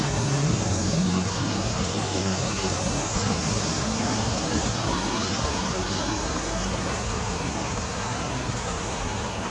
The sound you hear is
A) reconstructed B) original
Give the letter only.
A